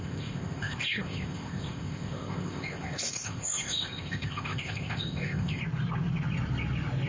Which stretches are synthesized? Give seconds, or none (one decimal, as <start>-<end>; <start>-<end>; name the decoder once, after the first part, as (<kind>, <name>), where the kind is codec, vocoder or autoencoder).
0.0-5.6 (codec, ZipCodec)